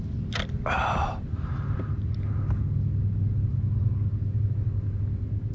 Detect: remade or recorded recorded